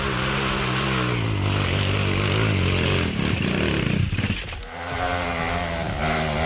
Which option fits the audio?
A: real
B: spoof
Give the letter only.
A